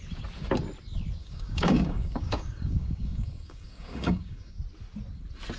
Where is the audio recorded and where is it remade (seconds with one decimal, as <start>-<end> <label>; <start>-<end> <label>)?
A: 0.0-1.2 recorded; 1.2-4.6 remade; 4.6-5.6 recorded